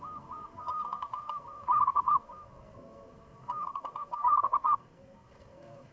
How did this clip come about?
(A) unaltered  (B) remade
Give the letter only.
B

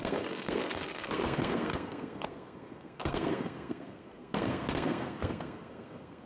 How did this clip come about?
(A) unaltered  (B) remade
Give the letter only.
B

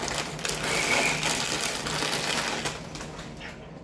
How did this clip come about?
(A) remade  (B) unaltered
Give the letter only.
B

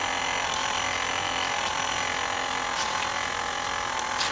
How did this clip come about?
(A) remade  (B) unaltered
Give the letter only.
B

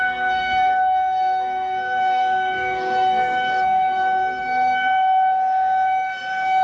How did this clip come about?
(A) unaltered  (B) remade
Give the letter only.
B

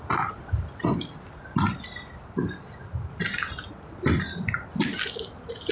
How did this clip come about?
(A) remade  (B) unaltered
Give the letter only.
B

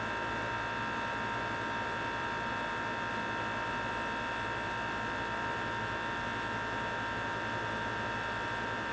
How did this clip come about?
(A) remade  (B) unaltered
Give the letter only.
B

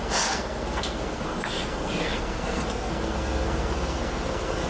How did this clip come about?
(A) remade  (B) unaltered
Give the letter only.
A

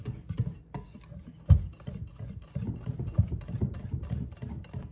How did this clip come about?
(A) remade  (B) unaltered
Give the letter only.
B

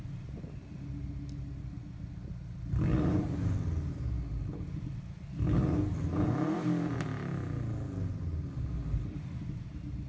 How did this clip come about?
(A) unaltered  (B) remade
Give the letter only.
A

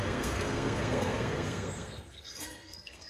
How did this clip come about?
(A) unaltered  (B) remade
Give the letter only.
B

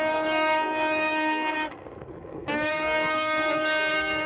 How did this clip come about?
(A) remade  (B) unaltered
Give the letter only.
A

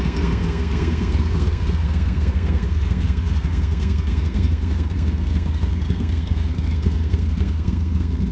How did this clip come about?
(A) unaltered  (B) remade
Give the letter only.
B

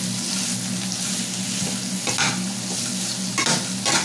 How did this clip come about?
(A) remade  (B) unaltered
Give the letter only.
B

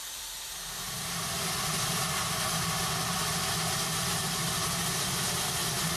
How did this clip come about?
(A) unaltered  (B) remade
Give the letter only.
A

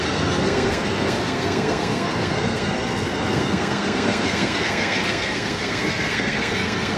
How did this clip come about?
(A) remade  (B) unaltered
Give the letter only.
A